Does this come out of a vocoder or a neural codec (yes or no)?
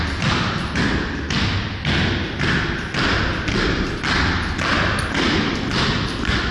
no